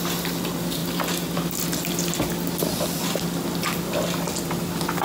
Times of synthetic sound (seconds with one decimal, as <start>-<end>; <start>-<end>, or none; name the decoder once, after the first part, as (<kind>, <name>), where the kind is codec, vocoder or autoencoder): none